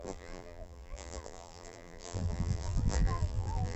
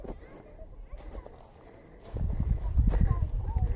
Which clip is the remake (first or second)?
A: first